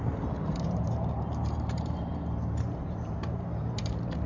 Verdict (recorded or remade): remade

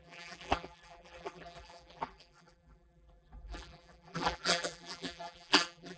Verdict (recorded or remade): remade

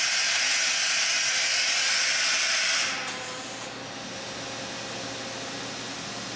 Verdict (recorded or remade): recorded